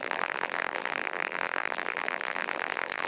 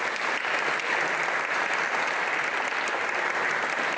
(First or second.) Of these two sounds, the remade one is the first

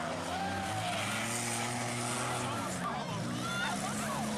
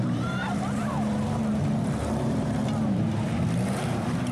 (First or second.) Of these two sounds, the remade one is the second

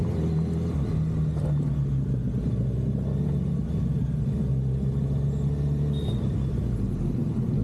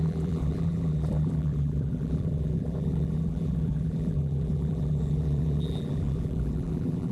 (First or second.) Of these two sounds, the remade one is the second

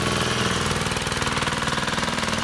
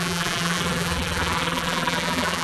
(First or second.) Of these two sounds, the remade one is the second